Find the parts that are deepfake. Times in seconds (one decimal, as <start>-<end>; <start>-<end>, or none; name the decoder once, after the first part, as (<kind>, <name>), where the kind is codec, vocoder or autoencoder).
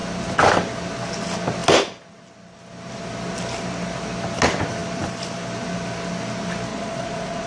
6.7-7.5 (vocoder, Vocos)